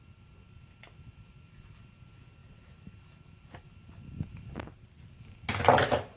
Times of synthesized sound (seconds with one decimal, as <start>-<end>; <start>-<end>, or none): none